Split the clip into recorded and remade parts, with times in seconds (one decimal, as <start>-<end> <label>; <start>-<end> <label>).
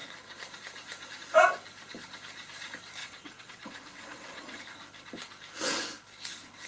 0.0-3.0 recorded; 3.0-4.6 remade; 4.6-6.7 recorded